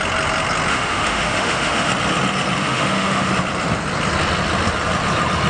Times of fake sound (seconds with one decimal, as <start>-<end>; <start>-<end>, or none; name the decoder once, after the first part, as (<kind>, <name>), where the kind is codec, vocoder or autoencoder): 0.7-1.9 (autoencoder, DAC-VAE); 2.6-3.3